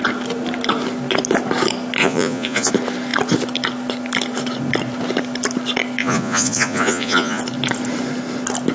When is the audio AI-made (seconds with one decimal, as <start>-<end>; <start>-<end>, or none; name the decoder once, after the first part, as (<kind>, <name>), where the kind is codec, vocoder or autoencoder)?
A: 2.0-2.7 (vocoder, Vocos); 6.0-7.4